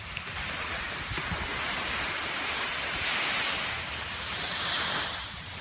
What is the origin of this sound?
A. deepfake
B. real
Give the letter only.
A